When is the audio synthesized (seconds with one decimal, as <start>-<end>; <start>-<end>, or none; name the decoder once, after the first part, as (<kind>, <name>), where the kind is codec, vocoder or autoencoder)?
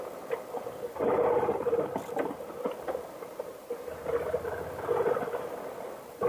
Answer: 3.5-4.4 (vocoder, BigVGAN v2)